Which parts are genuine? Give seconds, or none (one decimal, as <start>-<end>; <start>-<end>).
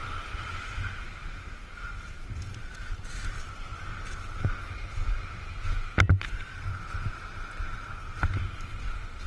0.0-9.3